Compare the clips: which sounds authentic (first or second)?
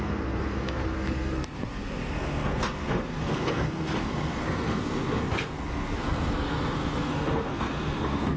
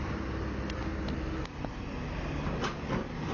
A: second